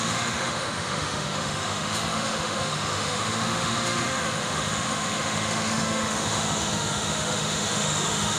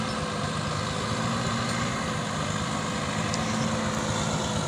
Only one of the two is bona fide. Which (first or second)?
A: second